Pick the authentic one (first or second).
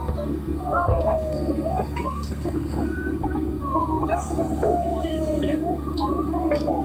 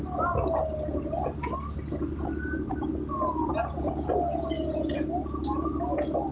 second